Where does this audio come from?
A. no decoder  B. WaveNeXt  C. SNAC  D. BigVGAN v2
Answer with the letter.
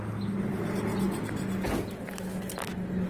A